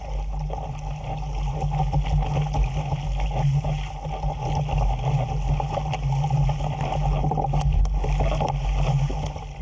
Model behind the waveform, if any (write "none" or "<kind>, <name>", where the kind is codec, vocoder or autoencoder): none